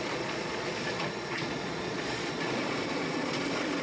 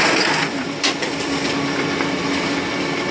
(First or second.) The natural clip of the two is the second